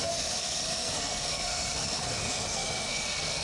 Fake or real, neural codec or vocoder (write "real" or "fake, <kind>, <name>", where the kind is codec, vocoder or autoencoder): fake, codec, SNAC